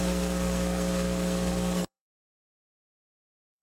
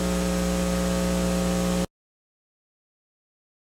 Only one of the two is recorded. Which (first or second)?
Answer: second